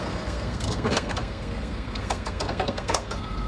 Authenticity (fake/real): fake